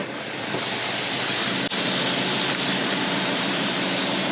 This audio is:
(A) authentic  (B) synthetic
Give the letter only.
A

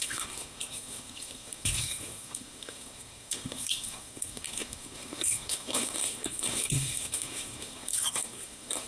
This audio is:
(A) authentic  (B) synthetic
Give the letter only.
B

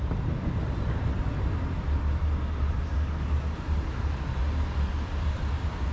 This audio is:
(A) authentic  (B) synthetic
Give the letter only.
A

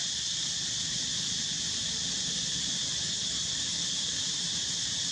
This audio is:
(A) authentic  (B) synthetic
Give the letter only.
B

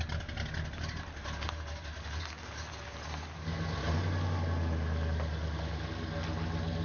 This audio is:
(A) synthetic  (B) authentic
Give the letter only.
B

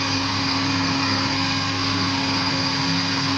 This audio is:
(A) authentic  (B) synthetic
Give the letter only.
B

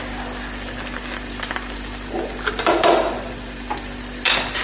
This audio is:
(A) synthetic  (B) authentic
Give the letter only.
B